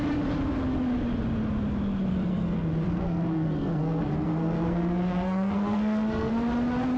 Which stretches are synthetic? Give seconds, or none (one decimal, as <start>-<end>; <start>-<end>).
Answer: 2.1-6.3